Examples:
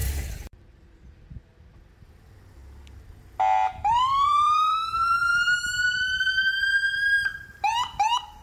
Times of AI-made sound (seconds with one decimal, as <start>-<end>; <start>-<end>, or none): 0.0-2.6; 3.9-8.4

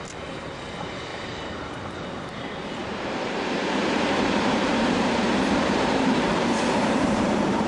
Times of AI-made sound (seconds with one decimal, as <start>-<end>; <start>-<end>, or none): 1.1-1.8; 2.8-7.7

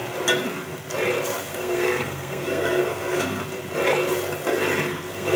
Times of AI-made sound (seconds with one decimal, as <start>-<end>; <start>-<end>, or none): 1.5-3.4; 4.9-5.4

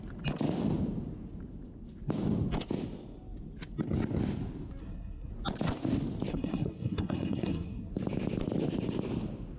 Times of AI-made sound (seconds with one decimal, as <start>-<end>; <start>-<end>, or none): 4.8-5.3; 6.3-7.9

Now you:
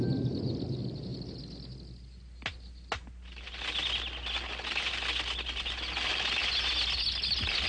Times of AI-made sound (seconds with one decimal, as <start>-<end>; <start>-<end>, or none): none